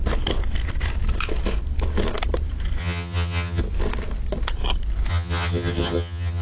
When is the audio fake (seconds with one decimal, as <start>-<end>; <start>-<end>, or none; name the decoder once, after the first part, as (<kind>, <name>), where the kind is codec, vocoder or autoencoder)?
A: 2.8-3.6 (vocoder, HiFi-GAN); 5.1-6.4